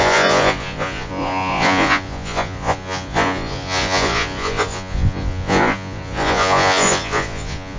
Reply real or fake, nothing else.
fake